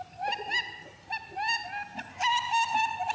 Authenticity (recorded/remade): recorded